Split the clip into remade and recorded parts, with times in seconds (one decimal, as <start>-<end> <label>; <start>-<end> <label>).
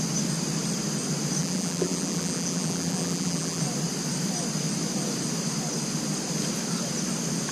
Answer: 0.0-1.4 recorded; 1.4-3.6 remade; 3.6-7.5 recorded